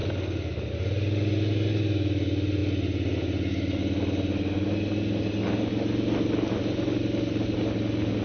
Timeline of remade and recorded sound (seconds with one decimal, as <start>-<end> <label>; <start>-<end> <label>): 0.0-8.2 recorded